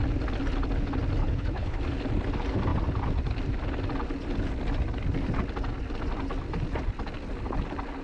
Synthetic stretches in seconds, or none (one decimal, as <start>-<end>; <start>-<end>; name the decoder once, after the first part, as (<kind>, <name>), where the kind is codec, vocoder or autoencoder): 1.2-1.8 (codec, HILCodec)